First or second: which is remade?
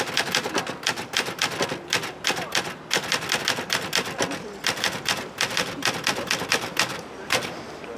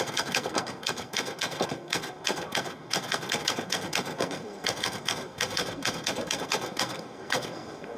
second